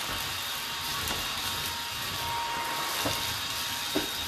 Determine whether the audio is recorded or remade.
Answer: recorded